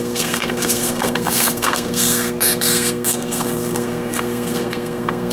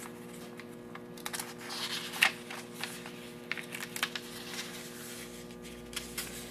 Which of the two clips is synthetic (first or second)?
first